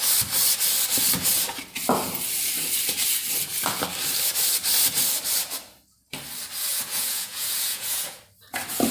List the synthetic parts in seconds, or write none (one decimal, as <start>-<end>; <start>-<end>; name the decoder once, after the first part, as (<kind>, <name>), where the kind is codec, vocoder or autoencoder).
6.7-8.2 (vocoder, Vocos)